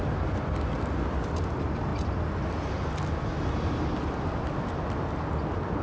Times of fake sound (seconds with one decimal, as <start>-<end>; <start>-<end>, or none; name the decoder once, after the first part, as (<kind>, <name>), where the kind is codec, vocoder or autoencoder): none